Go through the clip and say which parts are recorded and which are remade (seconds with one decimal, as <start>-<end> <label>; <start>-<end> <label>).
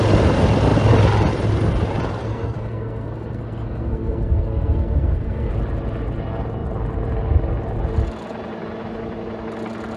0.0-2.2 recorded; 2.2-5.5 remade; 5.5-10.0 recorded